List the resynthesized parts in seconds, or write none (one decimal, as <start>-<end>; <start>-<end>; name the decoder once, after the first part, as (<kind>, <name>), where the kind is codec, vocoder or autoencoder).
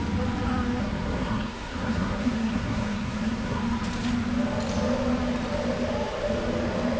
0.8-3.6 (codec, SNAC)